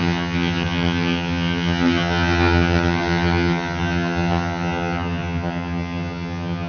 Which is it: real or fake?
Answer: fake